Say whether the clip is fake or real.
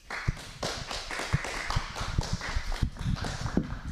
real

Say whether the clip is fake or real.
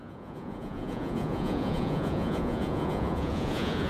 fake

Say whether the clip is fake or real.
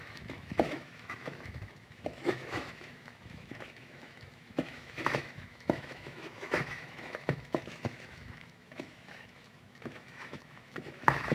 fake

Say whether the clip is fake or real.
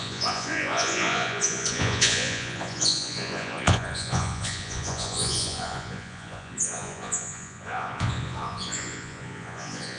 fake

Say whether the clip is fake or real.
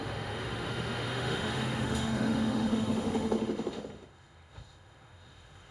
fake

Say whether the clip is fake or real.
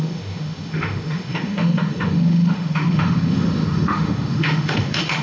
fake